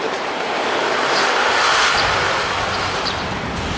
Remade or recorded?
remade